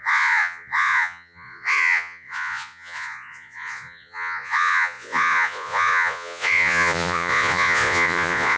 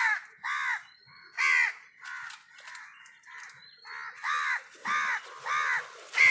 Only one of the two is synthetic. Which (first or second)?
first